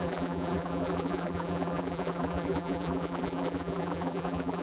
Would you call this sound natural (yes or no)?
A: no